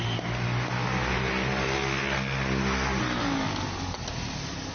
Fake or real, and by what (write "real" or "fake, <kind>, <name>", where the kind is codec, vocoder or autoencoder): real